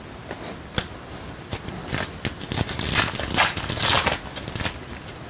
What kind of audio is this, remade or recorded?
recorded